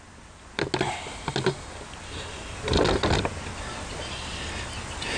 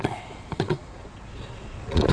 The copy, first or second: second